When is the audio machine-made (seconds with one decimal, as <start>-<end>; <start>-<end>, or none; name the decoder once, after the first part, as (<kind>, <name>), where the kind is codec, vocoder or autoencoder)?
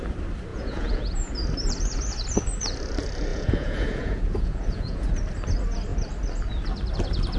0.5-1.3 (vocoder, Vocos); 3.3-5.1